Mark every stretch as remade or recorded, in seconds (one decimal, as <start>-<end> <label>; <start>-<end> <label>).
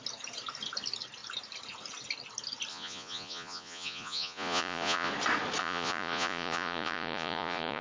0.0-2.7 recorded; 2.7-5.1 remade; 5.1-5.6 recorded; 5.6-7.8 remade